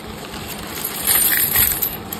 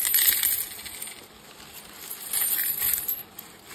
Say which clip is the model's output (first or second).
first